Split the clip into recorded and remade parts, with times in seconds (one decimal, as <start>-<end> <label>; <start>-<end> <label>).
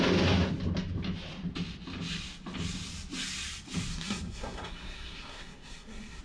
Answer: 0.0-3.9 recorded; 3.9-6.2 remade